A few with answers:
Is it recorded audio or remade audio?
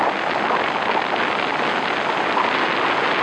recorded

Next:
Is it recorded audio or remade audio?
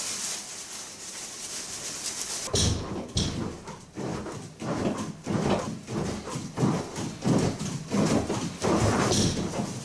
recorded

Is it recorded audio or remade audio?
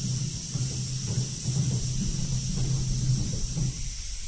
recorded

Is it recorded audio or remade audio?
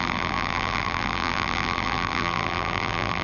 remade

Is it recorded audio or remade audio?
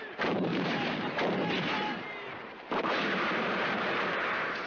remade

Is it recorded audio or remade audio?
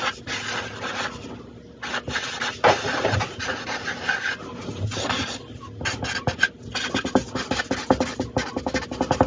recorded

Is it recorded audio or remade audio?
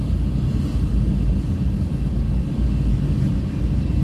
recorded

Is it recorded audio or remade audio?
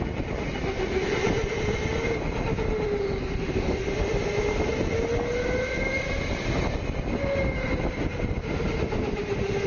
recorded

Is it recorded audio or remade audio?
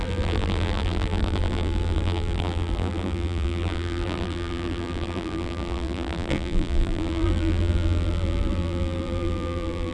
remade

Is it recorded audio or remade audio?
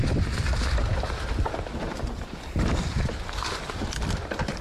remade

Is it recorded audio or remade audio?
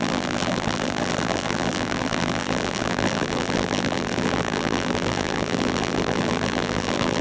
remade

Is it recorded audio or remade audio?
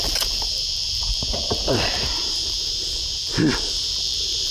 remade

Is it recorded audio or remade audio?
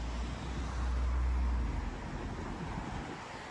recorded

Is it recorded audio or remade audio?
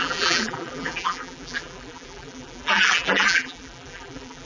remade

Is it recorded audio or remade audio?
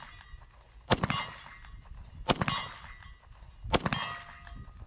recorded